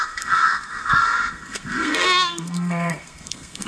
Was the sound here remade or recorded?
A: remade